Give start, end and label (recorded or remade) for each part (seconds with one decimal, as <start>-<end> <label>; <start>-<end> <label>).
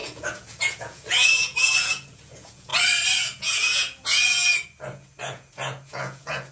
0.0-2.7 remade; 2.7-3.2 recorded; 3.2-6.5 remade